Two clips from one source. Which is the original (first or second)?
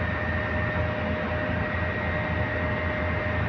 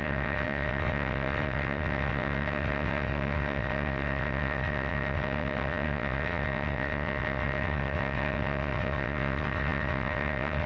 first